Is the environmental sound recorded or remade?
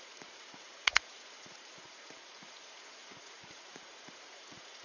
remade